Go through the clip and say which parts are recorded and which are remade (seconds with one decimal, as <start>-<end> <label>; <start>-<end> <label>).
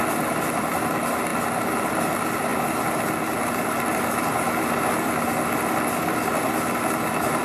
0.0-7.4 recorded